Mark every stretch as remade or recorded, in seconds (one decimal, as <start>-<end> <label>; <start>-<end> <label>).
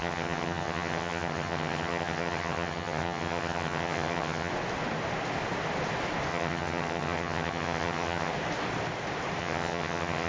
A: 0.0-4.5 remade; 4.5-6.3 recorded; 6.3-8.3 remade; 8.3-9.4 recorded; 9.4-10.3 remade